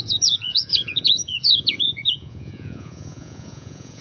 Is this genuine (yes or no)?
no